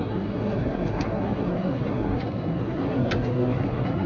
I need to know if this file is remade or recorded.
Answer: remade